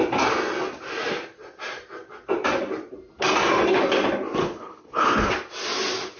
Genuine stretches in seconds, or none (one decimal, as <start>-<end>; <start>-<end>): 0.0-4.4; 5.3-6.2